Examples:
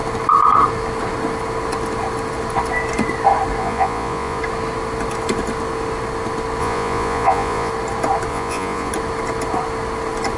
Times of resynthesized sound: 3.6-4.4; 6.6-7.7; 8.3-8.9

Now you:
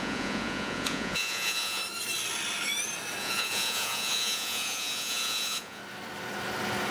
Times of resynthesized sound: 0.0-1.8; 3.2-5.8

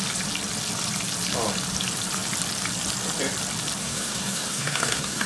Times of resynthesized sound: 3.8-5.3